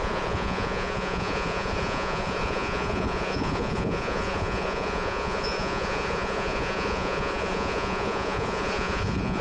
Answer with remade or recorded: remade